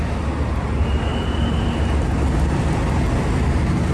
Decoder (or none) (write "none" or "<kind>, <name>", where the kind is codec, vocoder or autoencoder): none